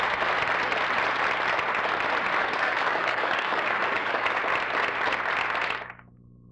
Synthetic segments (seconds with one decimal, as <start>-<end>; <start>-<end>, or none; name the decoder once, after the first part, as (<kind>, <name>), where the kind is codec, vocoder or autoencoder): 2.4-4.4 (codec, DAC)